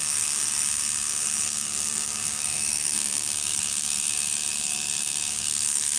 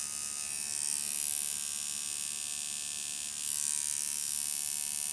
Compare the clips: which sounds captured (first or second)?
second